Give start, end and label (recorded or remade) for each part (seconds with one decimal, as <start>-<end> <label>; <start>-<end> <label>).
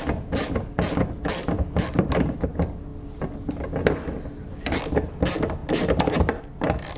0.0-7.0 recorded